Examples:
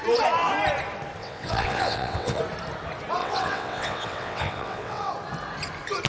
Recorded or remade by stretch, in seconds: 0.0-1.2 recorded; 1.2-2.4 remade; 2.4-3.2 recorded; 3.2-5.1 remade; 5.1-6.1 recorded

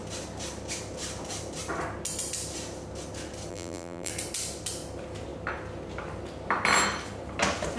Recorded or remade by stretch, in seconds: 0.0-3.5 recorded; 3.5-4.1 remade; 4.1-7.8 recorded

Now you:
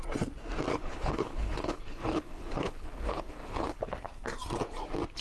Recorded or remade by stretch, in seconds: 0.0-0.7 recorded; 0.7-3.8 remade; 3.8-5.2 recorded